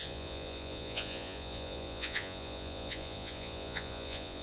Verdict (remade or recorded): remade